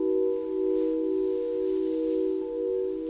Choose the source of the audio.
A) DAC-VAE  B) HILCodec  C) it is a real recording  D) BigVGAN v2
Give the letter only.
C